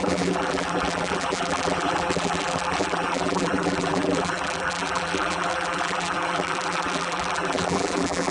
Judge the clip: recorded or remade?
remade